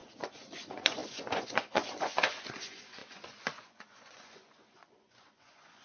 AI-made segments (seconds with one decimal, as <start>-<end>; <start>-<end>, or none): 0.0-5.8

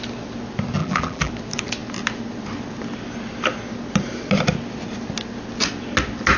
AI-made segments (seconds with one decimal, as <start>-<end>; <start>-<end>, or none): 0.8-1.3

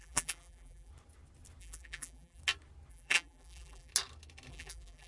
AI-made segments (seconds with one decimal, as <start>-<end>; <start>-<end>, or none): 0.0-0.9; 1.6-2.4; 2.9-3.9; 4.5-5.1

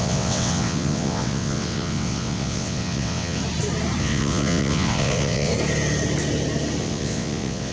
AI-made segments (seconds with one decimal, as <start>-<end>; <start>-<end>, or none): 0.0-3.4; 4.0-5.5; 6.8-7.7

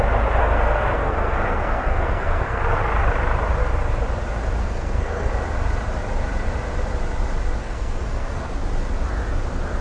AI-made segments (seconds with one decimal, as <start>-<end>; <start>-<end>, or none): 0.4-2.6; 4.6-5.3; 7.6-8.5

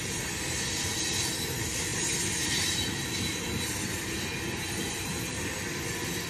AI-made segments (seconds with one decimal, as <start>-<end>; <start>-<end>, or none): none

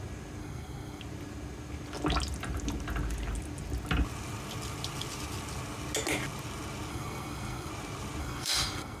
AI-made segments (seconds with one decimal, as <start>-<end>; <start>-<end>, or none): 0.4-1.0; 6.9-7.7; 8.2-9.0

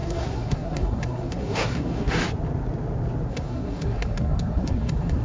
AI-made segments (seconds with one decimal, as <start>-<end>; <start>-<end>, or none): 0.0-2.2; 3.3-5.2